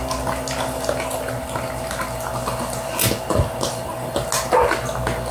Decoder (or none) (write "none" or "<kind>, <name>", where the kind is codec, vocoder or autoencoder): none